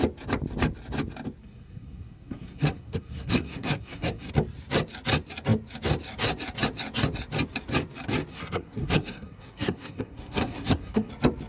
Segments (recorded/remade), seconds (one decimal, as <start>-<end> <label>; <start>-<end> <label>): 0.0-1.4 recorded; 1.4-4.3 remade; 4.3-8.3 recorded; 8.3-11.1 remade; 11.1-11.5 recorded